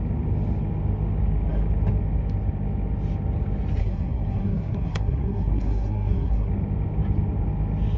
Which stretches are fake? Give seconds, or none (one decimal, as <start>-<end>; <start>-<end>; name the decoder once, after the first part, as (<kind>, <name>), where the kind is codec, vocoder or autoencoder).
3.8-6.5 (codec, SNAC)